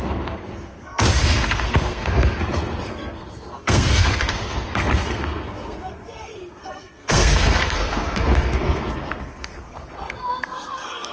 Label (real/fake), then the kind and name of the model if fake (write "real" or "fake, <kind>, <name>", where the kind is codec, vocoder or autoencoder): fake, codec, SNAC